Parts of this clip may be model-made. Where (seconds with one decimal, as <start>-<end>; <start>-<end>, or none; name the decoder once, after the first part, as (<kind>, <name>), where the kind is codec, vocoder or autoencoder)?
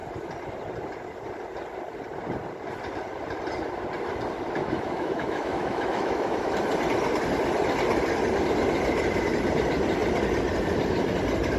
4.6-6.5 (autoencoder, DAC-VAE)